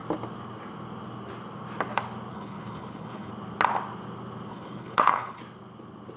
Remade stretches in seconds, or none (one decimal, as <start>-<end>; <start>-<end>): 2.3-3.3; 4.5-5.4